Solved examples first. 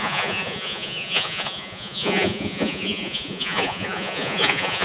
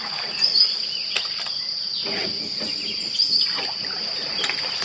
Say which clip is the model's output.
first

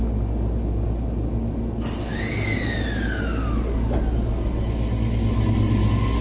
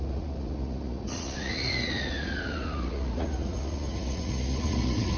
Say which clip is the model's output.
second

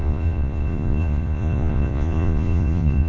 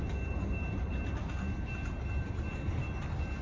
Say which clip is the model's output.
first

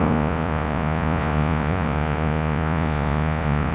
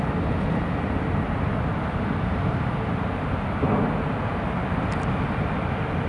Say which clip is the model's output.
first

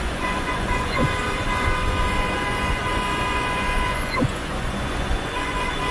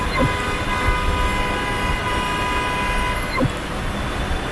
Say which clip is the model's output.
first